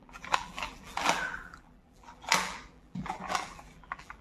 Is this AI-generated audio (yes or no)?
yes